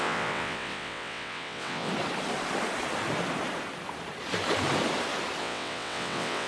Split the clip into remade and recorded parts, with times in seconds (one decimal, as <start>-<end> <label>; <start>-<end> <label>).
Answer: 0.0-1.9 remade; 1.9-5.4 recorded; 5.4-6.5 remade